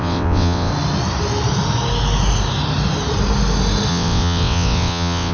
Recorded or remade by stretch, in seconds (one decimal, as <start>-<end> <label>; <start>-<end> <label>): 0.0-0.7 remade; 0.7-3.9 recorded; 3.9-5.3 remade